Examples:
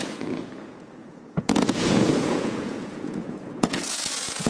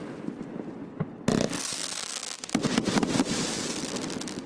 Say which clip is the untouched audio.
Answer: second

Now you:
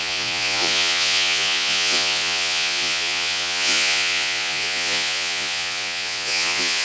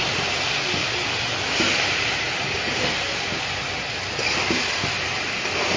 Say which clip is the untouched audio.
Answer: second